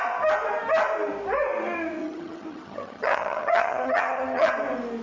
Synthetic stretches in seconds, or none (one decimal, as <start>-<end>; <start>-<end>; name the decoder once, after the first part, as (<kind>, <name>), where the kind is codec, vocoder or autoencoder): 2.0-4.5 (vocoder, HiFi-GAN)